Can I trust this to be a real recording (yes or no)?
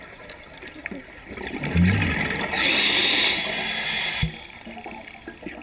yes